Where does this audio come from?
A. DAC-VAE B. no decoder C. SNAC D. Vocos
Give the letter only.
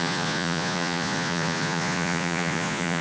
D